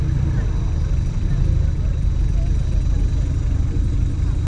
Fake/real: real